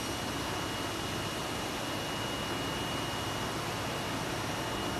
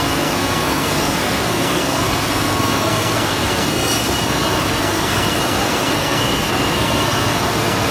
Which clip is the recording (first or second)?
first